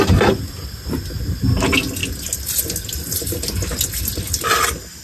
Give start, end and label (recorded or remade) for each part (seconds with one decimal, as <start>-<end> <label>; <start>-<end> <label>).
0.0-5.0 recorded